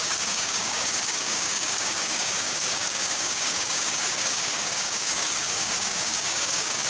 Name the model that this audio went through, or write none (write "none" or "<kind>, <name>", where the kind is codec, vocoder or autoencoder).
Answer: codec, DAC